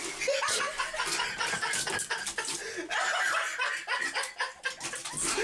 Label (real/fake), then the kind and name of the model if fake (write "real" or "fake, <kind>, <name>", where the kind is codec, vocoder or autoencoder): real